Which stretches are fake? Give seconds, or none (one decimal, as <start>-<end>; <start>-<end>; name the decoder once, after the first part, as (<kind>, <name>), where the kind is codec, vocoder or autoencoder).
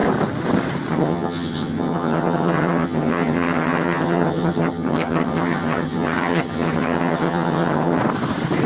0.9-8.0 (vocoder, HiFi-GAN)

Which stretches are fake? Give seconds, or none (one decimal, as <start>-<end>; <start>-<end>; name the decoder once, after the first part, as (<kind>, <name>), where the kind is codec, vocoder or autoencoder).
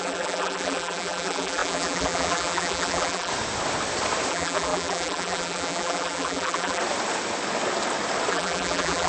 0.0-3.3 (vocoder, BigVGAN v2); 4.3-6.8; 8.3-9.1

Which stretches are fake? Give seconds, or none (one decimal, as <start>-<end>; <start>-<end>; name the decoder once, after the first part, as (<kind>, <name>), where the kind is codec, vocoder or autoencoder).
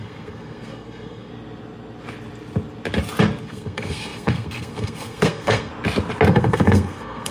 0.0-1.3 (codec, SNAC); 3.4-5.7; 6.3-7.3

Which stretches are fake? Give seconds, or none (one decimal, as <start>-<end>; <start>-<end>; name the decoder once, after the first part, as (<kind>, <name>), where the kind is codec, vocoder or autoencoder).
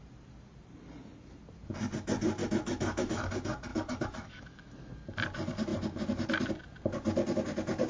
2.4-3.3 (autoencoder, DAC-VAE); 3.7-4.9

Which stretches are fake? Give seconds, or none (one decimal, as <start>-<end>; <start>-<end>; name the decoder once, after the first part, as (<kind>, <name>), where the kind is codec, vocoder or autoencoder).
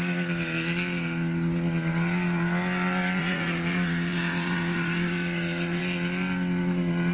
3.2-5.8 (vocoder, Vocos)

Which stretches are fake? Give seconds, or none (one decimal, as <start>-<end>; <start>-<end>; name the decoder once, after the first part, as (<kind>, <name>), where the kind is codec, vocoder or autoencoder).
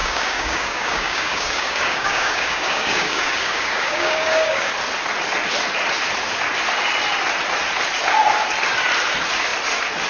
0.0-4.7 (codec, DAC)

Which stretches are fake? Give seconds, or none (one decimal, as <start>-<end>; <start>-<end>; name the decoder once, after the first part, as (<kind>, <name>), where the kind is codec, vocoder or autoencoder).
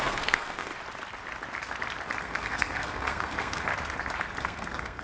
0.0-0.7 (codec, SNAC); 2.2-3.7; 4.4-5.0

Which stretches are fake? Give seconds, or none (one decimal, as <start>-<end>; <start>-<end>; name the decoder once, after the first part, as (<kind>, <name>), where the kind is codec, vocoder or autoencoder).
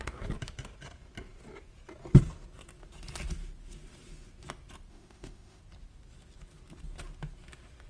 4.9-5.6 (autoencoder, DAC-VAE)